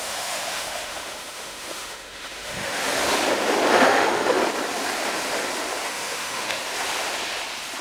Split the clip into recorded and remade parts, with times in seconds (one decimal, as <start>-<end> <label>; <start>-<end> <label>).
0.0-2.8 remade; 2.8-3.7 recorded; 3.7-4.4 remade; 4.4-5.9 recorded; 5.9-6.6 remade; 6.6-7.8 recorded